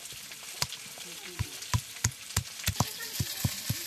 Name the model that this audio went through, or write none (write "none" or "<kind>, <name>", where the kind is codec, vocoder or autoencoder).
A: none